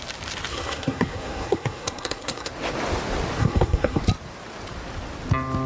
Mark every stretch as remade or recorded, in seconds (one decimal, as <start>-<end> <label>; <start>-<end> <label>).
0.0-0.5 recorded; 0.5-2.5 remade; 2.5-3.4 recorded; 3.4-4.0 remade; 4.0-5.7 recorded